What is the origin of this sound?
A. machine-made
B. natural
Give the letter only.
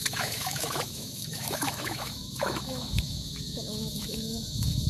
A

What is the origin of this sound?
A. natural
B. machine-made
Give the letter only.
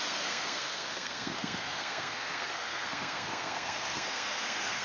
B